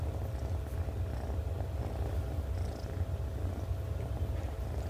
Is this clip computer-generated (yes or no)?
no